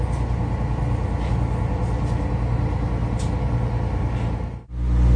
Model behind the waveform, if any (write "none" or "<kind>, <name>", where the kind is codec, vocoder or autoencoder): none